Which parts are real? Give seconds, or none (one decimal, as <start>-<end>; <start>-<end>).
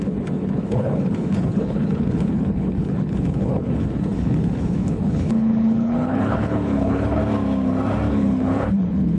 7.2-8.1